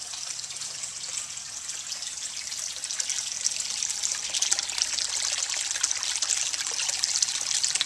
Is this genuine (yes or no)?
yes